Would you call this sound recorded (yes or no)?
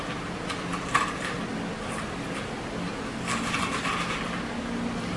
yes